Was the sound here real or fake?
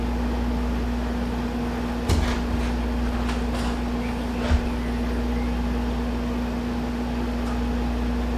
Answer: real